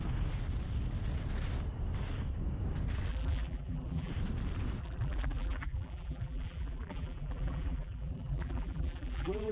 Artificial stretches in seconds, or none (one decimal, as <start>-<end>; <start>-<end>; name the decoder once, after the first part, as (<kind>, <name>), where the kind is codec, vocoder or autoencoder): 3.1-4.1 (vocoder, BigVGAN v2); 4.8-9.5